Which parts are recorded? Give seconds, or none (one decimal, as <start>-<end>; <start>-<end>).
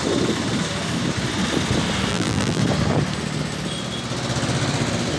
0.0-2.1; 2.6-5.2